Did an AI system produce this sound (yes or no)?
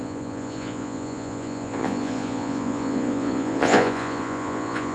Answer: yes